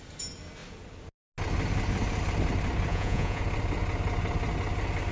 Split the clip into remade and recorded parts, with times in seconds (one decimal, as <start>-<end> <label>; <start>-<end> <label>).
0.0-2.9 recorded; 2.9-3.4 remade; 3.4-5.1 recorded